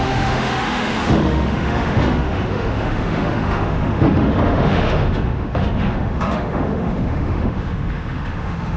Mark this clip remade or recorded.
remade